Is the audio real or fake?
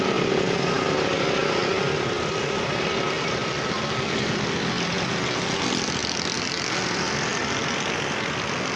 real